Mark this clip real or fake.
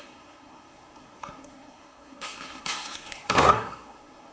fake